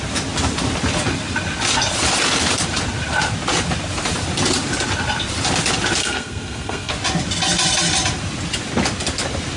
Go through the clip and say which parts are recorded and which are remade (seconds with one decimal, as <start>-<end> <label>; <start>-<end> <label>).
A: 0.0-6.0 recorded; 6.0-6.9 remade; 6.9-9.6 recorded